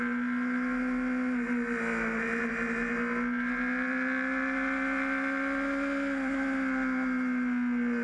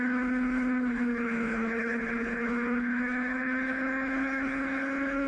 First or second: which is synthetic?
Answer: second